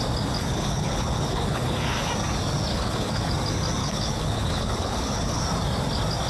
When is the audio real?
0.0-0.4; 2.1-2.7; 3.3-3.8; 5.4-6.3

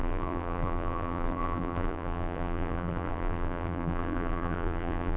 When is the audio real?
none

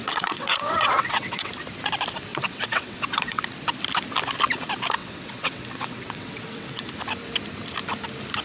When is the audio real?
1.5-2.3; 3.4-5.0; 6.9-8.4

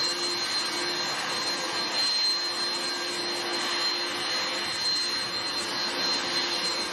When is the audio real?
0.0-6.9